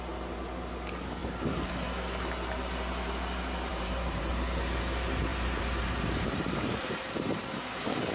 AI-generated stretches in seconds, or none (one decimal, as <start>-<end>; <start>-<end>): 1.2-1.7; 3.7-4.3; 5.3-7.1